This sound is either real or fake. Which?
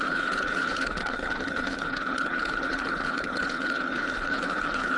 fake